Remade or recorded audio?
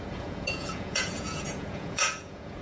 remade